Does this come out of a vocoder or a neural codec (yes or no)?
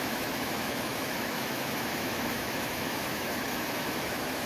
yes